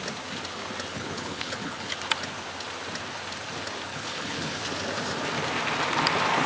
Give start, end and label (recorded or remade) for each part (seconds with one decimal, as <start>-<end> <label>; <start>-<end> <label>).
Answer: 0.0-0.9 recorded; 0.9-2.0 remade; 2.0-3.9 recorded; 3.9-4.6 remade; 4.6-6.5 recorded